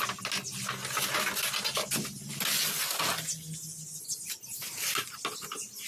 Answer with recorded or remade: recorded